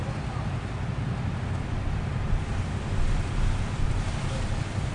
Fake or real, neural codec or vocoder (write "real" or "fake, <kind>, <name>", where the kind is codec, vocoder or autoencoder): real